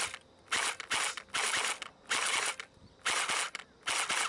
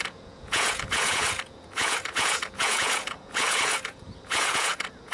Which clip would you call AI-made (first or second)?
second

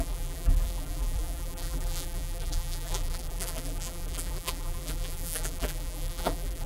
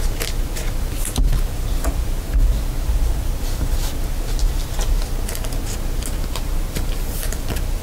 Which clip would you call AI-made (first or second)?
first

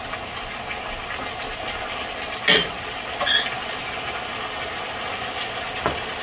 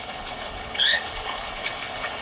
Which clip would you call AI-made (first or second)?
second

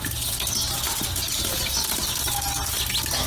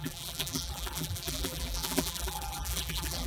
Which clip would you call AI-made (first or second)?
second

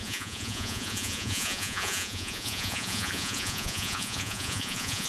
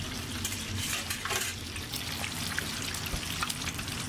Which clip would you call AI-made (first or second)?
first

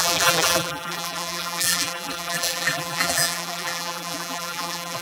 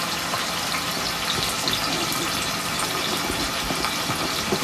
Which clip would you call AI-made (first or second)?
first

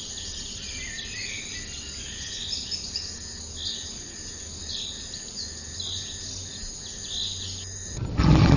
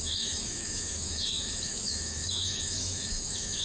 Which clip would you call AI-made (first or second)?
second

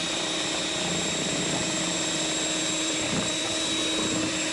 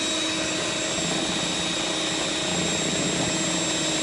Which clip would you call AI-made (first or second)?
first